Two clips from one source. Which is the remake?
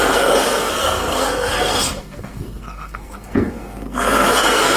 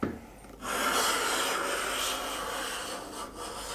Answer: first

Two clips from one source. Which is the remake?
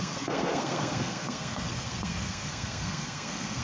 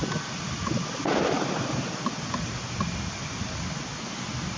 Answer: first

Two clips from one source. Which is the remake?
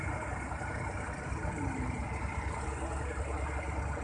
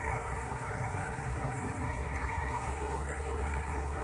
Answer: second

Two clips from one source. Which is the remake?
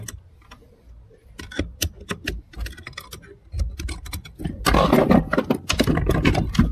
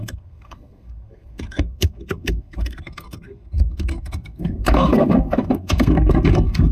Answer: second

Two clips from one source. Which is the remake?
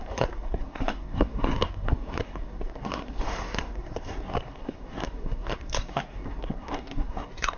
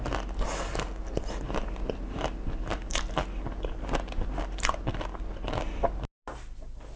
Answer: first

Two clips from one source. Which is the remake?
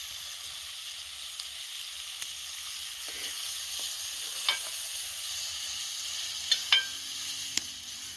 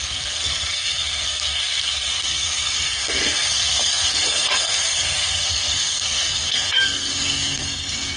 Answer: second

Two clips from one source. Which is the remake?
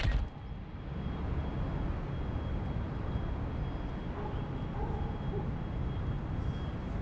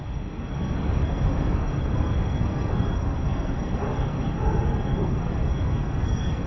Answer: second